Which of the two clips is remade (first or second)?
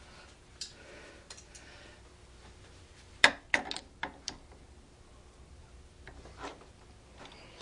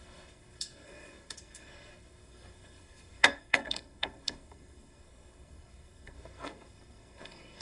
second